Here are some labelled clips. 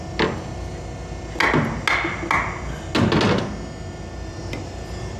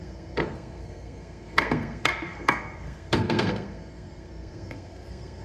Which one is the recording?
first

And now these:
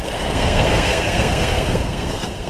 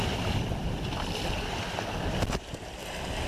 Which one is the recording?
second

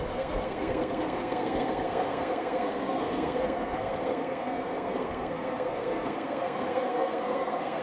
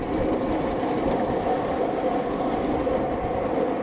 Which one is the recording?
second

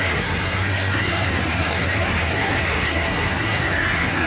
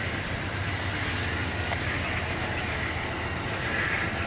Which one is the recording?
second